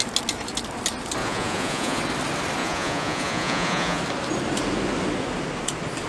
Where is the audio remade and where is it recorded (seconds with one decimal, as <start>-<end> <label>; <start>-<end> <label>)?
0.0-1.2 recorded; 1.2-2.0 remade; 2.0-2.6 recorded; 2.6-4.0 remade; 4.0-6.1 recorded